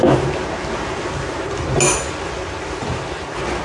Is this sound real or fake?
real